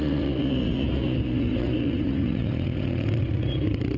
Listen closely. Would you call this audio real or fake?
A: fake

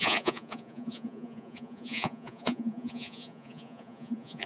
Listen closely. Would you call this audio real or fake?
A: fake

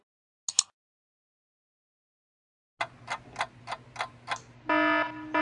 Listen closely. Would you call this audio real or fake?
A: real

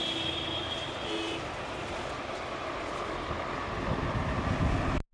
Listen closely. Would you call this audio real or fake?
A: real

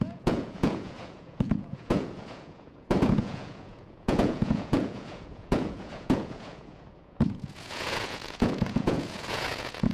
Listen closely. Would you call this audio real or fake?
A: fake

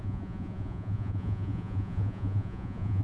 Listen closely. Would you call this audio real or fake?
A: fake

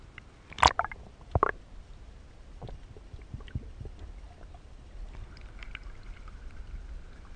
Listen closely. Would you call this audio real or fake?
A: real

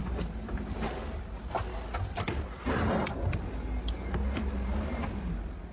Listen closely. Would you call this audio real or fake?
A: real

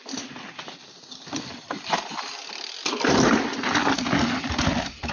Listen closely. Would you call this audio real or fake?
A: real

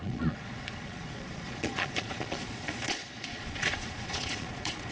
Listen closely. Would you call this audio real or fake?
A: fake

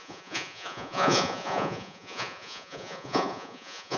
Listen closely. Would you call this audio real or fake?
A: fake